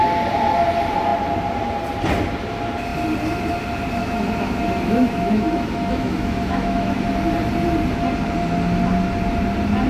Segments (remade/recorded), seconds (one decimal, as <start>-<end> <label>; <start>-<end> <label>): 0.0-4.0 recorded; 4.0-7.0 remade; 7.0-9.9 recorded